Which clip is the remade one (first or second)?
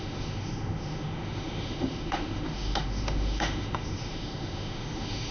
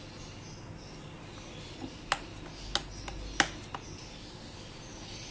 first